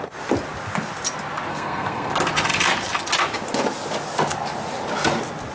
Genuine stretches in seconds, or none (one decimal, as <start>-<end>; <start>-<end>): 0.0-1.5; 2.1-5.5